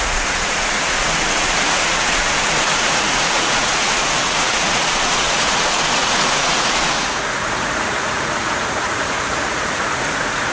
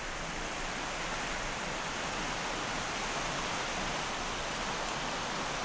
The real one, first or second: second